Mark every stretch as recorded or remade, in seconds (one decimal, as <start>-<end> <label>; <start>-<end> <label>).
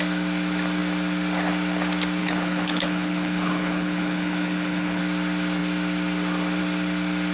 0.0-2.2 recorded; 2.2-5.0 remade; 5.0-7.3 recorded